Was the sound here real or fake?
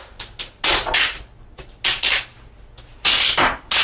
real